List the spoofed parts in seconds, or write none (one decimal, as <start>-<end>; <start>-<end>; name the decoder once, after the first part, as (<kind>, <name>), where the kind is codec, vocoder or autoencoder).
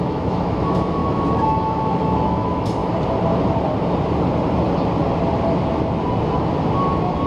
0.0-2.8 (autoencoder, DAC-VAE)